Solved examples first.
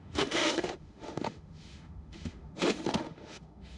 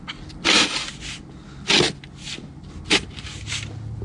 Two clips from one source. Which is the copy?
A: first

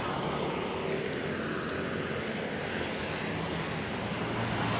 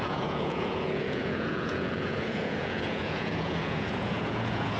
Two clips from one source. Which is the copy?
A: second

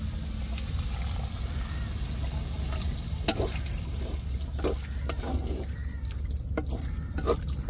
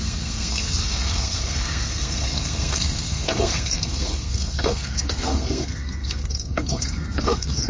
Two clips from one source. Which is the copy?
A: second